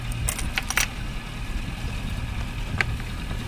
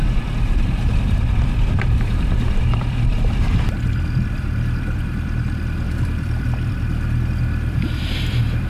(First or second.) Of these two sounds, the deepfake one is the second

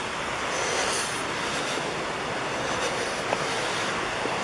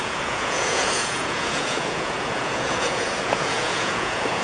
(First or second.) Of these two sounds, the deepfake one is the second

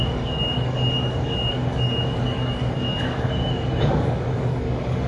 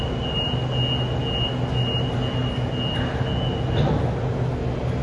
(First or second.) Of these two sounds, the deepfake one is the first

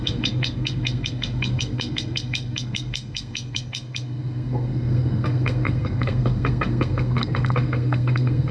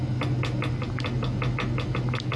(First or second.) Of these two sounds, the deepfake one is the first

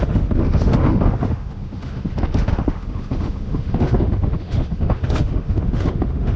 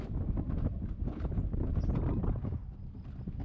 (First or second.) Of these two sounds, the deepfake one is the first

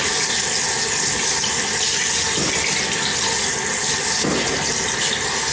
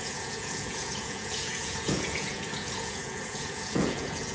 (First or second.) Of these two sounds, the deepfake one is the second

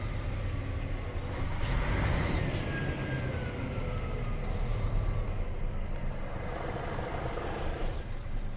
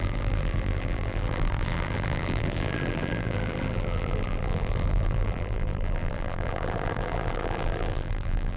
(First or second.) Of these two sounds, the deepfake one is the second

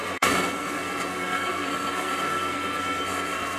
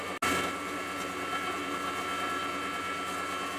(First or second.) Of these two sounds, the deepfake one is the first